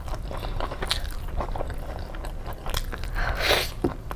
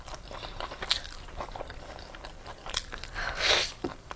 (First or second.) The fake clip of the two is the second